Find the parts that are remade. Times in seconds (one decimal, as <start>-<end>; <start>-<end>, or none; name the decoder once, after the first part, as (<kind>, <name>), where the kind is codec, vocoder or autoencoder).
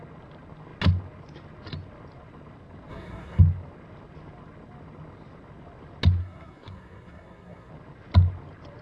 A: 2.9-3.4 (codec, SNAC); 6.2-7.7